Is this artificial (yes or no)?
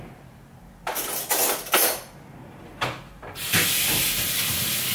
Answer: yes